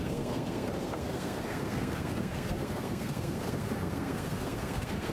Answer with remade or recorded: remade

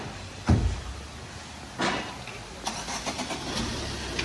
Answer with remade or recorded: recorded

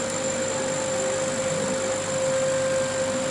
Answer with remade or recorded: recorded